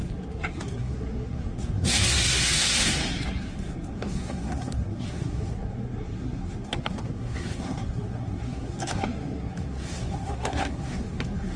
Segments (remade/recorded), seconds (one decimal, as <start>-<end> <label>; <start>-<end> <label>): 0.0-11.6 remade